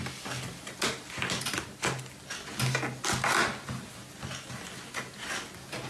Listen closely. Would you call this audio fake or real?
real